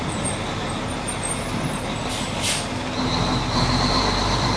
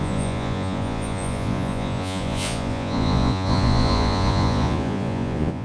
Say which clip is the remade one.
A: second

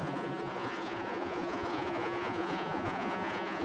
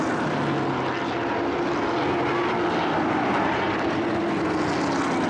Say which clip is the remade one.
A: first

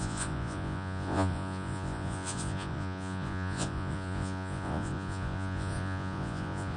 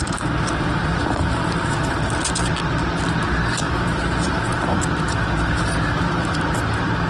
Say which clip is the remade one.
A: first